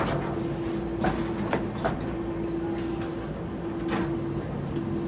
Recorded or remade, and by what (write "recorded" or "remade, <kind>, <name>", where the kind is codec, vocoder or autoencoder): recorded